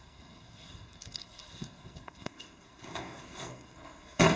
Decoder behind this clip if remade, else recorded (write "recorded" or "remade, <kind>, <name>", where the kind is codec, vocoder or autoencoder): remade, codec, SNAC